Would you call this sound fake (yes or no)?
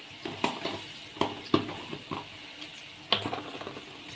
no